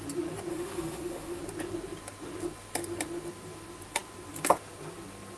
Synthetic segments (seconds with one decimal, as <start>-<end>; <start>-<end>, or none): 0.5-1.4